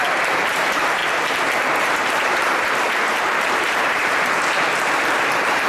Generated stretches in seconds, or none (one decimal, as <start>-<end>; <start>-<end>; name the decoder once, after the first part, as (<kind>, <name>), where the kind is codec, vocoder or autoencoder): 0.0-1.0 (vocoder, BigVGAN v2); 1.8-5.7

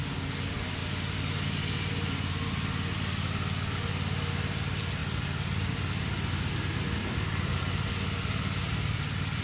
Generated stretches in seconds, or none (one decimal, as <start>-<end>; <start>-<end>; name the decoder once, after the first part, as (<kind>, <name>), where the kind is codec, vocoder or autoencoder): 7.0-7.6 (vocoder, BigVGAN v2)

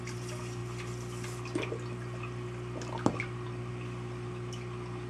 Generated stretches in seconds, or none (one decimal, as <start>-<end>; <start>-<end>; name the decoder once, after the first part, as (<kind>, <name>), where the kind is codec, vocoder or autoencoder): none

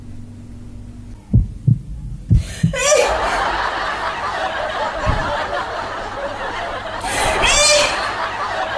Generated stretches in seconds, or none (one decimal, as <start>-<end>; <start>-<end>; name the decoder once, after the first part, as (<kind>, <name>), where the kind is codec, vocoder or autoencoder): 5.2-5.8 (vocoder, BigVGAN v2)

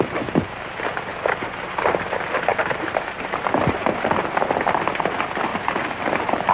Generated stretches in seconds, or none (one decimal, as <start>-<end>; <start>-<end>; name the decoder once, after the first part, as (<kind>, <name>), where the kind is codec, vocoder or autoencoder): 2.5-3.5 (vocoder, BigVGAN v2); 5.5-6.0

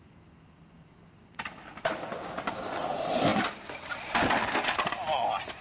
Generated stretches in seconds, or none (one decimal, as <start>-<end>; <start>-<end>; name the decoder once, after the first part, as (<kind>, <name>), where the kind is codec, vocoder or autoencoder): none